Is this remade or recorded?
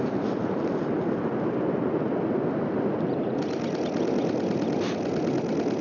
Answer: recorded